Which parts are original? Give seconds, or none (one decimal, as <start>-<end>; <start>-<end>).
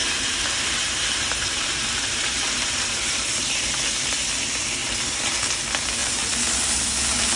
3.7-4.8; 5.6-6.0; 6.8-7.4